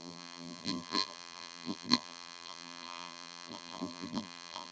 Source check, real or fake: fake